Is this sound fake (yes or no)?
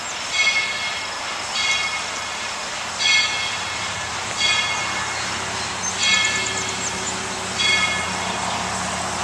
no